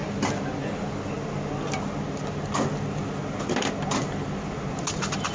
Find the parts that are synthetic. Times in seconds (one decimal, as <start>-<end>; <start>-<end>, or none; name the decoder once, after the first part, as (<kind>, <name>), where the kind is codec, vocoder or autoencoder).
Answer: none